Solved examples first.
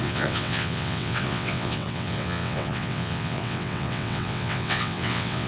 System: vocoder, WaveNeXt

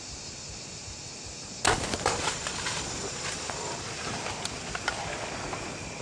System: none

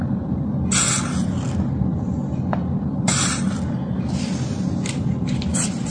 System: none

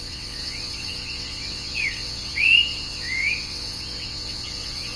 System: vocoder, WaveNeXt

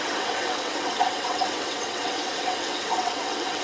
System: vocoder, WaveNeXt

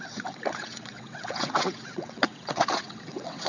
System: vocoder, WaveNeXt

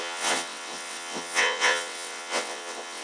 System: vocoder, WaveNeXt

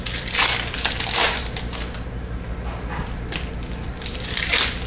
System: none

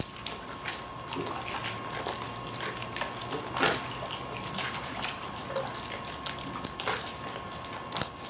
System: none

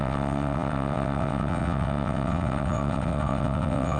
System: vocoder, WaveNeXt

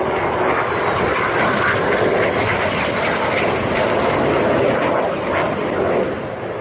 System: none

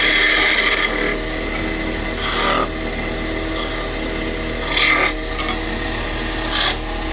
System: none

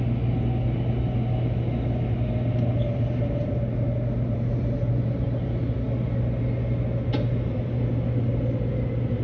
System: none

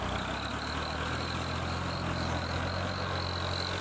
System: none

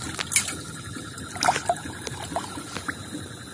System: none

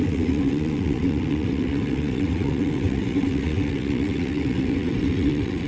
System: vocoder, WaveNeXt